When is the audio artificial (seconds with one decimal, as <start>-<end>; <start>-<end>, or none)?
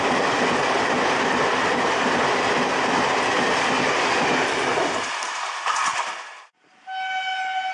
none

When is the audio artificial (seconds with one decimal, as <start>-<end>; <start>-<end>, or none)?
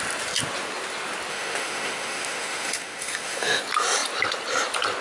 1.3-3.6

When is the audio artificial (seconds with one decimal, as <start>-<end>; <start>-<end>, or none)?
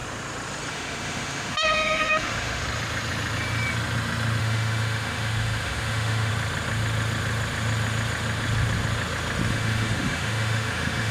0.7-2.6; 4.4-6.3; 9.5-11.1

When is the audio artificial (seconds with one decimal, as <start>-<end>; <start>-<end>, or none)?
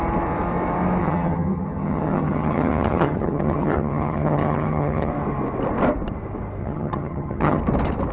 1.0-5.1; 6.6-7.6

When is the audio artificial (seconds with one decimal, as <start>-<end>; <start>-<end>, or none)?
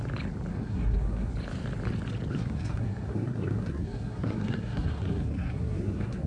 0.5-1.3; 2.3-6.3